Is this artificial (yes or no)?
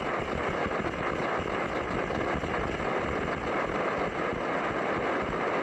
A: no